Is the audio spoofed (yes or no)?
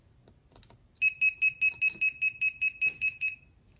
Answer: no